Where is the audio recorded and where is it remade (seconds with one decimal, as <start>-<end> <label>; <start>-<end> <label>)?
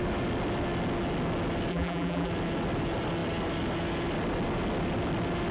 0.0-1.7 recorded; 1.7-2.3 remade; 2.3-5.5 recorded